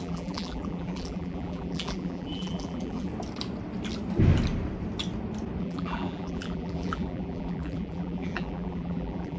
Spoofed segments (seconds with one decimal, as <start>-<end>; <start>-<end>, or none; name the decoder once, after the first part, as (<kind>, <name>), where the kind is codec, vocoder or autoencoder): 0.0-3.1 (vocoder, BigVGAN v2); 5.6-9.4